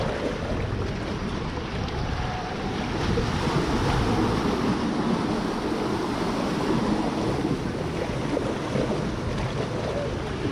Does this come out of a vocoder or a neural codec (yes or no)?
no